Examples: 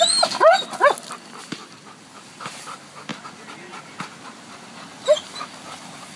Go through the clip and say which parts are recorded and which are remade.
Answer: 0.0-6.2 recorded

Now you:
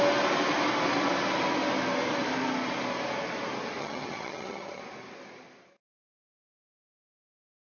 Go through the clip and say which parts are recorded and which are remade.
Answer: 0.0-3.8 recorded; 3.8-4.8 remade; 4.8-7.7 recorded

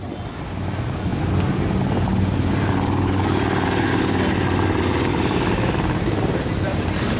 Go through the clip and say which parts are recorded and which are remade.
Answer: 0.0-5.1 recorded; 5.1-7.2 remade

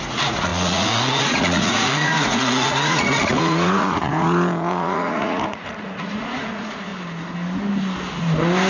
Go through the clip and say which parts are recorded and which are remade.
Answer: 0.0-6.9 remade; 6.9-8.7 recorded